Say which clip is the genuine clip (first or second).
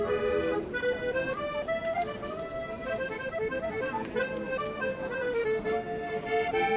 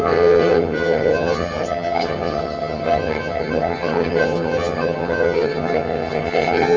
first